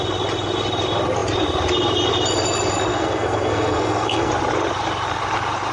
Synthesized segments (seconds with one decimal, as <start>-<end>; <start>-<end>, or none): 2.9-4.3